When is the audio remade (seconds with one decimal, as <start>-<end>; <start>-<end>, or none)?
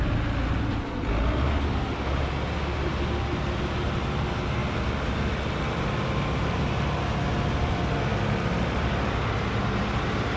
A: none